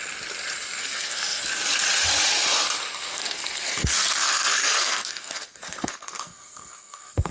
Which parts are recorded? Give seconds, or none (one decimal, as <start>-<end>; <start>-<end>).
0.0-0.8; 1.4-2.8

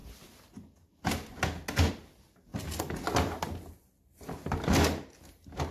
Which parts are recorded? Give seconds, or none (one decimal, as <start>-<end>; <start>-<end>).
0.0-5.7

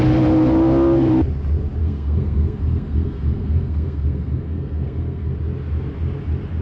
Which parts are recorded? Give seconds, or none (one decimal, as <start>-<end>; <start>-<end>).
0.0-1.8; 5.3-6.6

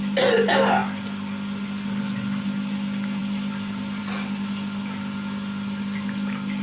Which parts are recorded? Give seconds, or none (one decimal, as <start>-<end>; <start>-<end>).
0.0-6.6